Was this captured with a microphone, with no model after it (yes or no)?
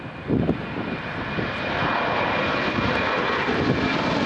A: no